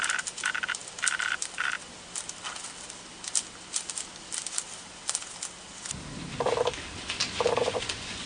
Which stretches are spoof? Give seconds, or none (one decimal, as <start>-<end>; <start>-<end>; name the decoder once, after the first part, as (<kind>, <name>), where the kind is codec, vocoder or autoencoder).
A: 7.6-8.3 (vocoder, Vocos)